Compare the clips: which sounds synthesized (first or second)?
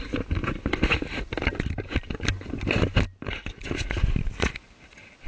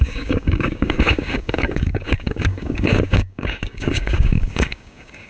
second